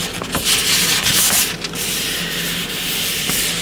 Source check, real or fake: real